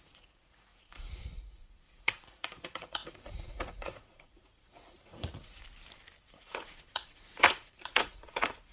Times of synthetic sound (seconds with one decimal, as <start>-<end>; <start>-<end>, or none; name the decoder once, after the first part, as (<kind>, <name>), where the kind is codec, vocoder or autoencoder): 0.0-5.6 (vocoder, Vocos); 6.2-8.7